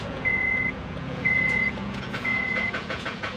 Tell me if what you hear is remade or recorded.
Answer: remade